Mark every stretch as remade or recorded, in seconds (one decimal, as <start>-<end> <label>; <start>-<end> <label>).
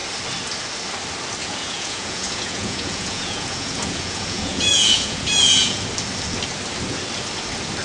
0.0-1.4 recorded; 1.4-5.8 remade; 5.8-7.8 recorded